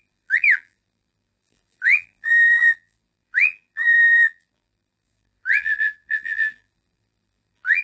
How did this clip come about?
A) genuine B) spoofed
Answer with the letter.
B